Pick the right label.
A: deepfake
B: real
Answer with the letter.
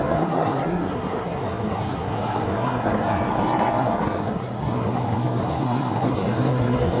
A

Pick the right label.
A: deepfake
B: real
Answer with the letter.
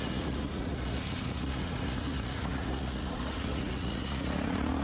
A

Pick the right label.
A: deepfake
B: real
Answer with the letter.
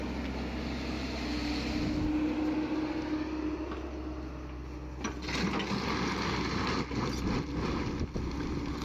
B